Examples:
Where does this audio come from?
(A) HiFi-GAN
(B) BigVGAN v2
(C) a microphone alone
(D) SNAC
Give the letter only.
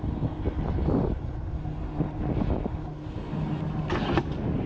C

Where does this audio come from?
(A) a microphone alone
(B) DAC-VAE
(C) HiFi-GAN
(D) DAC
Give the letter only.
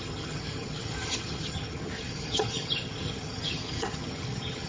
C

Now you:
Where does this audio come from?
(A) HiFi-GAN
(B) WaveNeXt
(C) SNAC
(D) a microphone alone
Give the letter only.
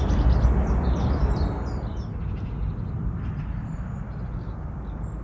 D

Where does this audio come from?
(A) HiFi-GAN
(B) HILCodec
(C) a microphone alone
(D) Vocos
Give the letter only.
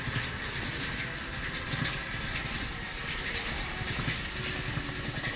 C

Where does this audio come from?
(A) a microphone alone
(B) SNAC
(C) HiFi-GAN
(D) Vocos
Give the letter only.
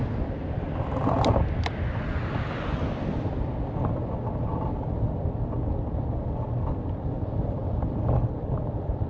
A